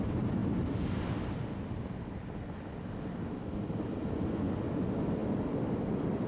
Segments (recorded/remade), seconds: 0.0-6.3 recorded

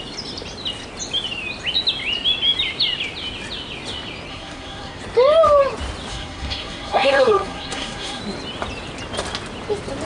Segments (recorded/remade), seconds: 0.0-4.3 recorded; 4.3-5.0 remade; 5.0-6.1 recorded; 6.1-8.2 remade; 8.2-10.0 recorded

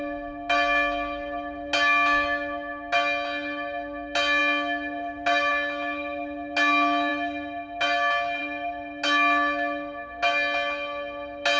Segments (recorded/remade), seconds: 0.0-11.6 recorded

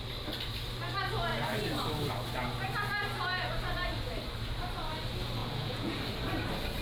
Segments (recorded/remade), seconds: 0.0-5.4 recorded; 5.4-6.0 remade; 6.0-6.8 recorded

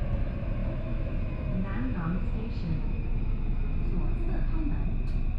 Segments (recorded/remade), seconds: 0.0-0.6 recorded; 0.6-3.8 remade; 3.8-5.4 recorded

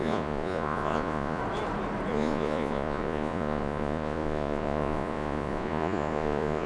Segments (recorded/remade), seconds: 0.0-1.4 remade; 1.4-2.1 recorded; 2.1-6.7 remade

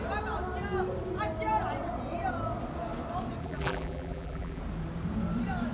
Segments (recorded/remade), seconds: 0.0-3.4 recorded; 3.4-4.6 remade; 4.6-5.7 recorded